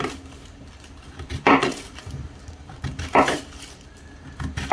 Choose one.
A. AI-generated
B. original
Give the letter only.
A